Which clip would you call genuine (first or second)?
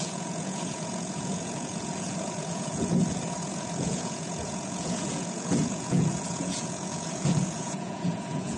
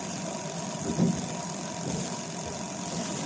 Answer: second